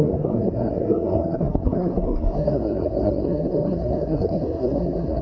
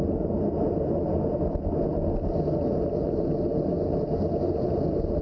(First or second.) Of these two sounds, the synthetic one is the first